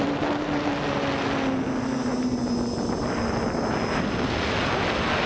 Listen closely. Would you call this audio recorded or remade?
recorded